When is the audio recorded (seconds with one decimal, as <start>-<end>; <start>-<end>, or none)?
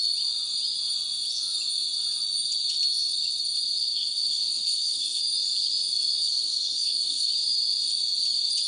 0.0-3.8; 5.2-6.2; 7.3-8.7